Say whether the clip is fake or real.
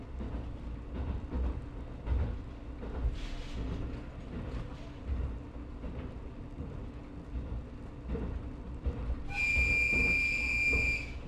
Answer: real